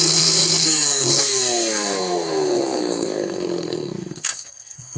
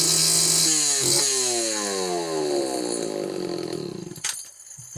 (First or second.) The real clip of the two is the second